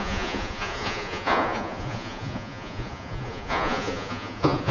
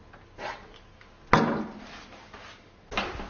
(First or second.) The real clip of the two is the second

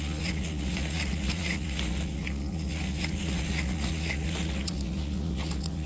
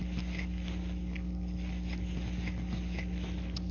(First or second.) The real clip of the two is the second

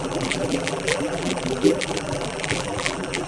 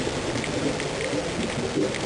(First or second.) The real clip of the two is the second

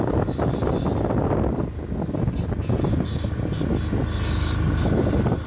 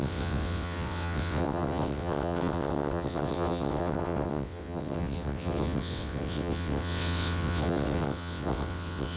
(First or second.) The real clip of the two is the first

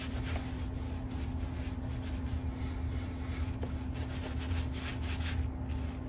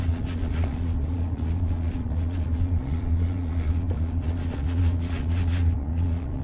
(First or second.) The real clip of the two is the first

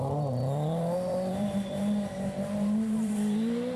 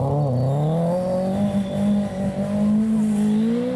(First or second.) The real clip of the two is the second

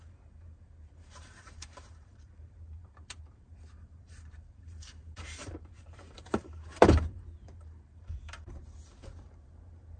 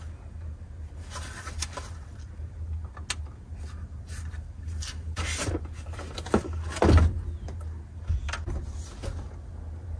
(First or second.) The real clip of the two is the second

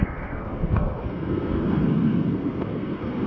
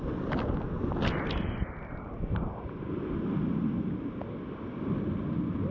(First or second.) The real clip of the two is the second